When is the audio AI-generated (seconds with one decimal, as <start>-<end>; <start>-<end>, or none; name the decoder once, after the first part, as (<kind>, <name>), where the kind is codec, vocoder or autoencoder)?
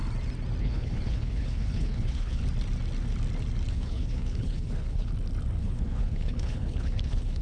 0.6-2.4 (codec, HILCodec); 3.7-5.1; 5.6-7.4